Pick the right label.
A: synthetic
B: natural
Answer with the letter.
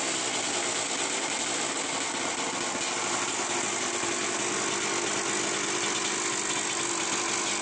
B